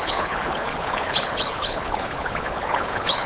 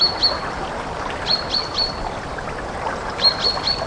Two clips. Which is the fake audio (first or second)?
first